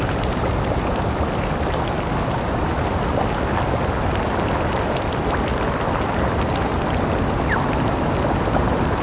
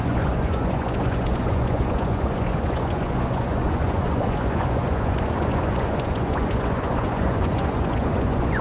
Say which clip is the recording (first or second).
first